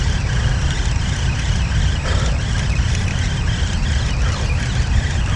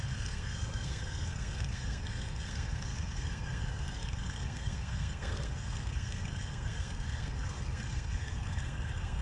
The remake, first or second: second